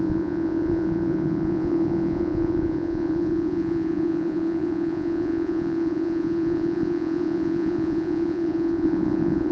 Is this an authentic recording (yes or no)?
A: no